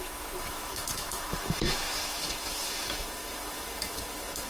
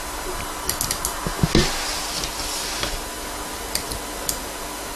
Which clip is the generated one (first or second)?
first